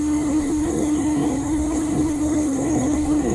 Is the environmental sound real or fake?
fake